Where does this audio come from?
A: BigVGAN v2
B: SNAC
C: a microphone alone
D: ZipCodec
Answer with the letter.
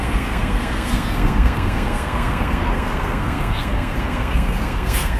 B